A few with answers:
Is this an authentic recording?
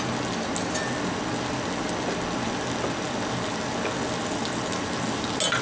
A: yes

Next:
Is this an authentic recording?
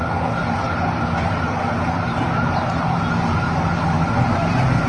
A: yes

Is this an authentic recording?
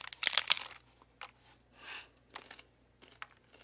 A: yes